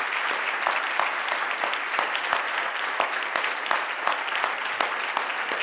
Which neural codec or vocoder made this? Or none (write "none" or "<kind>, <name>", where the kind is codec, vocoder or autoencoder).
none